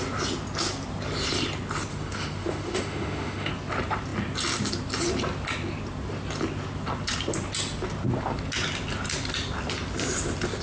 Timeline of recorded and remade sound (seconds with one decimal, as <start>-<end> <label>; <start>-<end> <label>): 0.0-1.9 recorded; 1.9-3.5 remade; 3.5-10.6 recorded